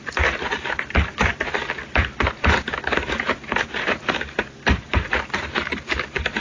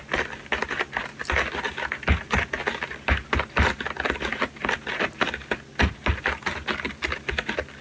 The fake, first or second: first